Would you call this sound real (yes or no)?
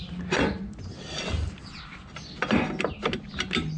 yes